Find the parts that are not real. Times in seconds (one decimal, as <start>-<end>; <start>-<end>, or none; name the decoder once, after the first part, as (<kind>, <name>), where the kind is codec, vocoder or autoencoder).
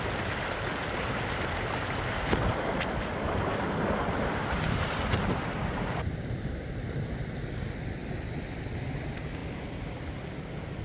none